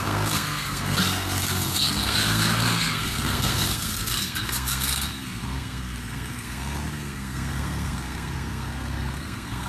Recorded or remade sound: remade